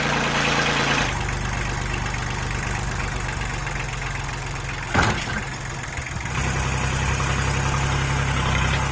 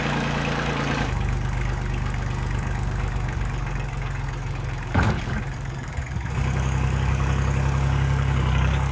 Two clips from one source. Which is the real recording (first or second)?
first